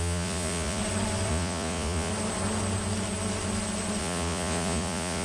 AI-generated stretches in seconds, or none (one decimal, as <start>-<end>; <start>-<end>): 0.0-0.8; 1.3-2.1; 4.0-5.2